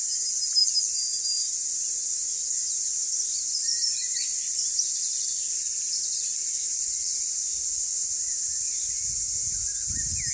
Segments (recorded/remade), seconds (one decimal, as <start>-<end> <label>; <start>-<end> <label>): 0.0-10.3 recorded